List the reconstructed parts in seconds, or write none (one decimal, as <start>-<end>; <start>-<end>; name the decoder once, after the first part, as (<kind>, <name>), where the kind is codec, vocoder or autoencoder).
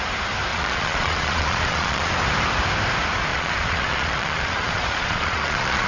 0.5-2.1 (vocoder, Vocos); 3.3-5.9